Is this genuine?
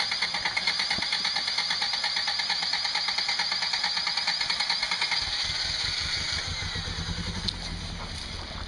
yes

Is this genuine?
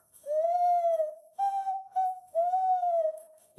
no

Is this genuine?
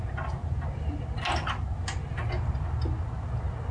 yes